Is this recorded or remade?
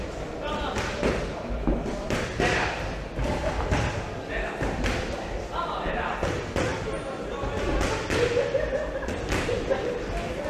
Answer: recorded